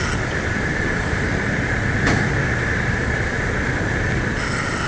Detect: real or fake real